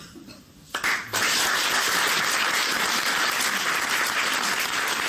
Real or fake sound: fake